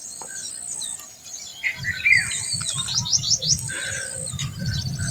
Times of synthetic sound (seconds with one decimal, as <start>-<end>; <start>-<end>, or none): 0.0-0.5; 1.5-3.7; 4.4-5.1